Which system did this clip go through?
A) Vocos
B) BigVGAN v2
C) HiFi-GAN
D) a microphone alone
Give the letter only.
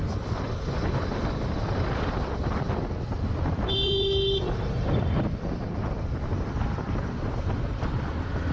B